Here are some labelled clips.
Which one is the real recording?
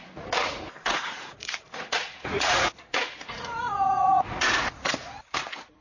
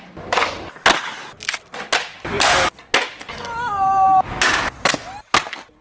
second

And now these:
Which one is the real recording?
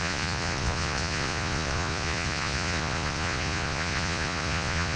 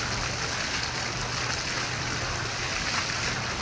second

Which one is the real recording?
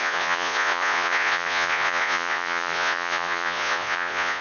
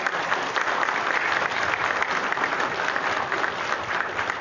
second